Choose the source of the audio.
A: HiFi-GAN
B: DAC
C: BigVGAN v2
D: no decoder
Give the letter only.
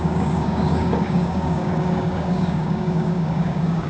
B